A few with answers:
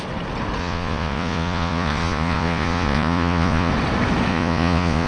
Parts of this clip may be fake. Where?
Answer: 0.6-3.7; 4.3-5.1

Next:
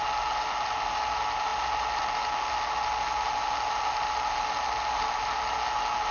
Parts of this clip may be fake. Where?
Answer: none

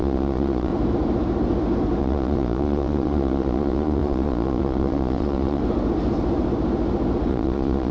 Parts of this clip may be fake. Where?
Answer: 0.0-0.7; 2.0-5.6; 7.3-7.9

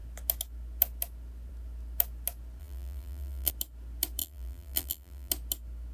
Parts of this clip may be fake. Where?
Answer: 2.6-3.5; 4.2-5.3

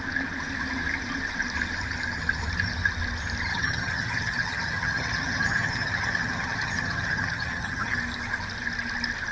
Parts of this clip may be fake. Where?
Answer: 3.5-8.0